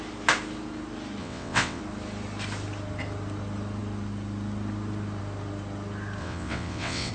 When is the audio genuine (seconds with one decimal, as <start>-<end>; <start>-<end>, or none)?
0.0-1.2; 1.8-6.2